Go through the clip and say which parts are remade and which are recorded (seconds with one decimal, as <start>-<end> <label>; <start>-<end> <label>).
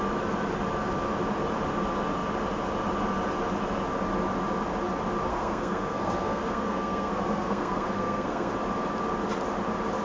0.0-5.3 recorded; 5.3-8.5 remade; 8.5-10.0 recorded